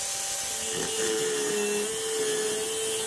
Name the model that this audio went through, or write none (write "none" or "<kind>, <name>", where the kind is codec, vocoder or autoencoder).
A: none